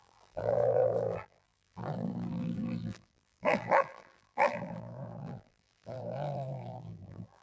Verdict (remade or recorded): remade